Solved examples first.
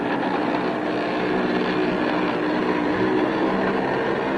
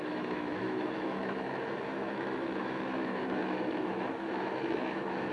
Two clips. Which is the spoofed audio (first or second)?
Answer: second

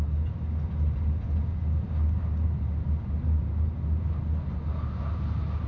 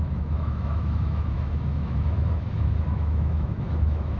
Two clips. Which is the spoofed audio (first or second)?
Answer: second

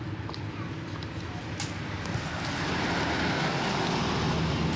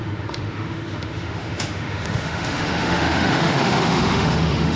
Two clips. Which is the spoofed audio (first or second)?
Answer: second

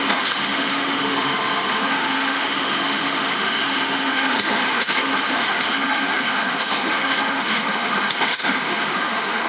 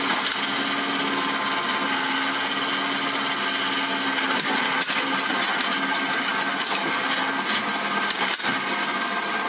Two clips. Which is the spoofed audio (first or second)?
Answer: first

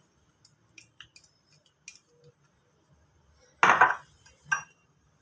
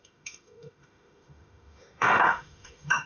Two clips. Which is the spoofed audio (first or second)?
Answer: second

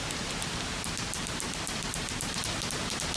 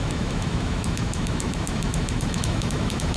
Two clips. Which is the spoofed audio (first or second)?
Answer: second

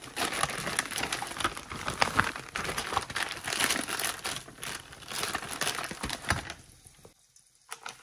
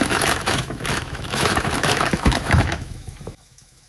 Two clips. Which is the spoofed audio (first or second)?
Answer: second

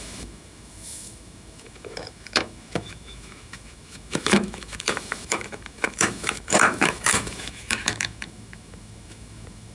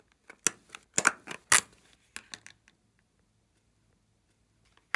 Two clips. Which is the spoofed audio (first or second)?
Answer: first